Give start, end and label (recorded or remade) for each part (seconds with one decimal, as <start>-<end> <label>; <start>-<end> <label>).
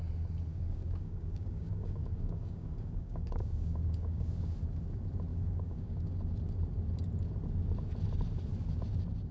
0.0-0.5 recorded; 0.5-4.5 remade; 4.5-5.3 recorded; 5.3-6.1 remade; 6.1-9.3 recorded